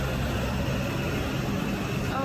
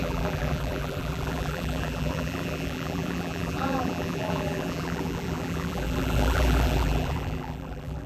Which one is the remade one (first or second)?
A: second